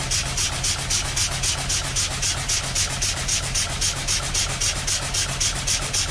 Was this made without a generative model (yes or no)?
yes